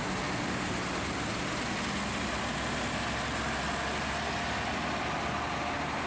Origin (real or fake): real